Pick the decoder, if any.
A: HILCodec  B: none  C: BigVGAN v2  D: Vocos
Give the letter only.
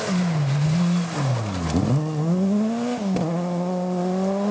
B